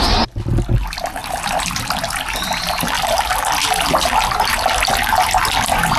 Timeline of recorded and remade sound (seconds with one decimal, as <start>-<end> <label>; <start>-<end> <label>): 0.0-6.0 recorded